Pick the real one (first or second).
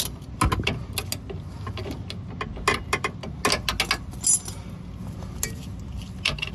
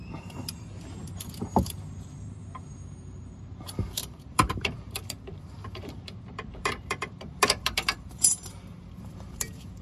first